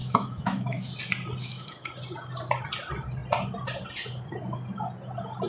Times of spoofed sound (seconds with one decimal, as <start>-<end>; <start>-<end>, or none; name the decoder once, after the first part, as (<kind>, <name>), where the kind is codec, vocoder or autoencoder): 0.0-0.9 (autoencoder, DAC-VAE); 1.4-1.9

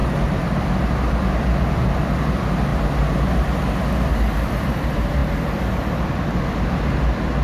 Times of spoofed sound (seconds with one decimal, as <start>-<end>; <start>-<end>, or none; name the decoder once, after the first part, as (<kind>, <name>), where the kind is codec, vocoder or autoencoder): 5.2-6.1 (vocoder, BigVGAN v2)

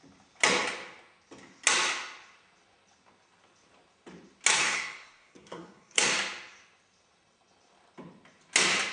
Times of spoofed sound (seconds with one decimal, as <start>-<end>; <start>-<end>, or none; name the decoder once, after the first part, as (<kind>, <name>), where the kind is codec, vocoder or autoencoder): 4.5-6.1 (codec, SNAC)

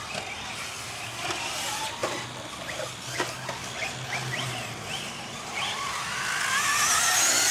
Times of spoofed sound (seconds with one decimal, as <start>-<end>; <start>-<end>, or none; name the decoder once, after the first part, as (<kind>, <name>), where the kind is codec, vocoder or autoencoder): none

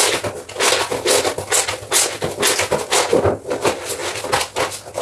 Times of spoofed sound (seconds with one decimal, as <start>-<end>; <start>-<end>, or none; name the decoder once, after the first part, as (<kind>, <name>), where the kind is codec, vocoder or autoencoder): none